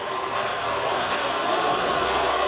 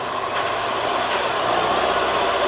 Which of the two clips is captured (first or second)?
second